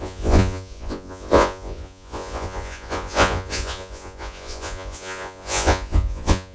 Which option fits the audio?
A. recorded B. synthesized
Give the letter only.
B